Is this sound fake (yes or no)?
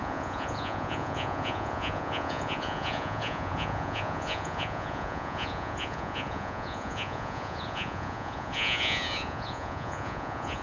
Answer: yes